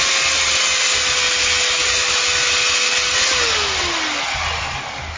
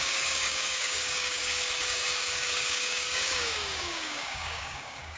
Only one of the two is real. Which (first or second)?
first